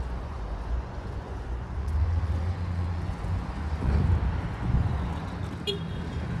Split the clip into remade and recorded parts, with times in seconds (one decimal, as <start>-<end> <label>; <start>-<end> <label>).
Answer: 0.0-4.0 remade; 4.0-4.5 recorded; 4.5-5.4 remade; 5.4-5.9 recorded; 5.9-6.4 remade